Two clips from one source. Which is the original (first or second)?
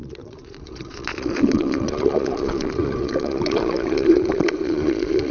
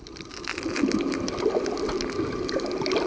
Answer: second